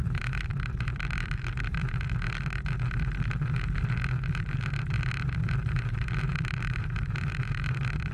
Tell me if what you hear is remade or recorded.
remade